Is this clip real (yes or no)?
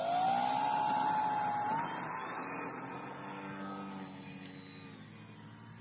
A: yes